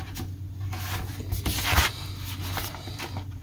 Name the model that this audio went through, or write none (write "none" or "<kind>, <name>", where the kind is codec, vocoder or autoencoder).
none